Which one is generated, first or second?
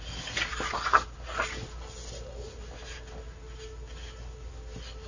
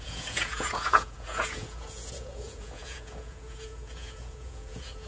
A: second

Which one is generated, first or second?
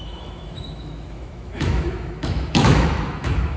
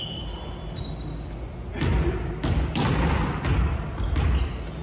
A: first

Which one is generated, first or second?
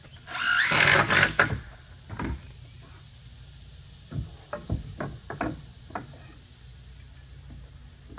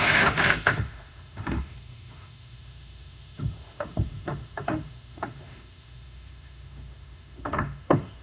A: second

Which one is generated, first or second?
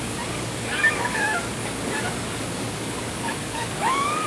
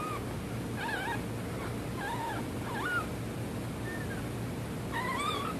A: first